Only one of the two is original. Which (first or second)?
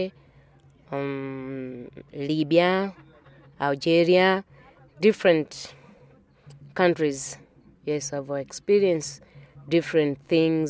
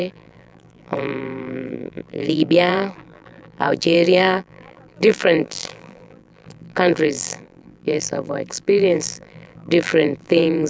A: first